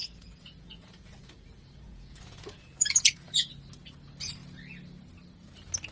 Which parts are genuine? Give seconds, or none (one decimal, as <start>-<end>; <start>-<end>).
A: 3.5-5.9